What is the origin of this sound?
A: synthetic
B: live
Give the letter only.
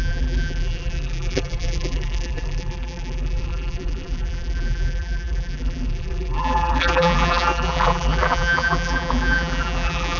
A